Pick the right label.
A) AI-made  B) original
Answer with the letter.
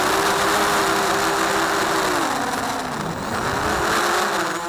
B